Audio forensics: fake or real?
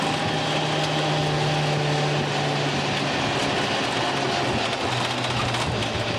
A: real